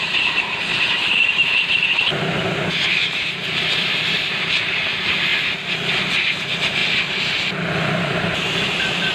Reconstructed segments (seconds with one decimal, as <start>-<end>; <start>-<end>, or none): 0.0-5.3; 6.1-6.8; 8.0-9.1